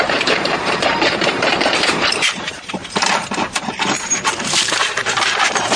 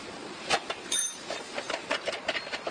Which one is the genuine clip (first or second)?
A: second